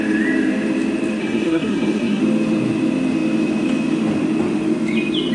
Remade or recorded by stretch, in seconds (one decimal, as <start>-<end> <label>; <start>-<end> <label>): 0.0-1.2 recorded; 1.2-2.2 remade; 2.2-5.3 recorded